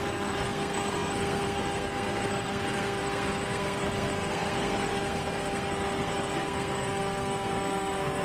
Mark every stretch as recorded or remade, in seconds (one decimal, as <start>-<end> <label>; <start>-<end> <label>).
0.0-8.2 remade